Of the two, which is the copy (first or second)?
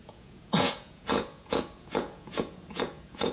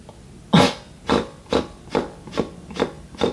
first